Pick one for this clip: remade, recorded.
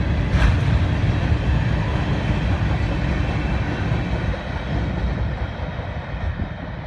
recorded